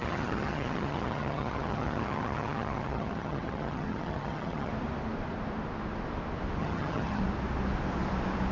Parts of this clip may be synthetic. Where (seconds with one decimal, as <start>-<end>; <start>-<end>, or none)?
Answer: 0.0-4.7; 6.6-7.2